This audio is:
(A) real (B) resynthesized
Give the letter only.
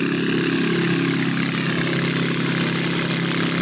A